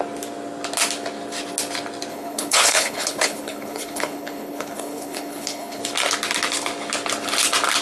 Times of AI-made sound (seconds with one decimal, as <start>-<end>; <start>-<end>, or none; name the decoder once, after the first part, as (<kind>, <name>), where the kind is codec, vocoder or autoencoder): 2.1-5.8 (codec, HILCodec)